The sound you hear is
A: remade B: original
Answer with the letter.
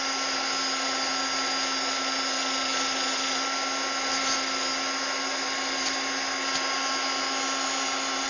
B